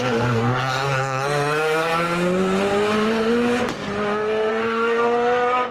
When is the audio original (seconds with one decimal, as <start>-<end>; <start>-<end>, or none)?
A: 1.9-4.5